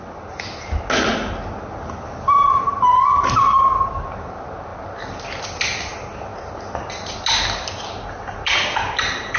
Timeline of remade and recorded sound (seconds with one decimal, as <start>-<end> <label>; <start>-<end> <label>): 0.0-9.4 recorded